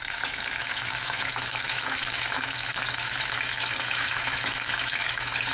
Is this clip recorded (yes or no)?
no